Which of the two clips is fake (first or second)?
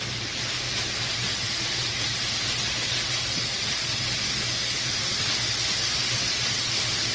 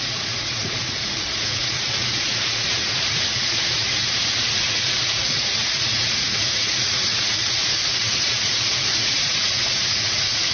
second